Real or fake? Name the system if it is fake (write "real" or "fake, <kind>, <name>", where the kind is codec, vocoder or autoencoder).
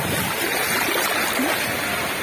real